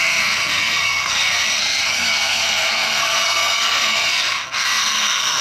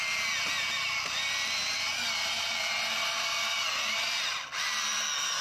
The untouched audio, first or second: second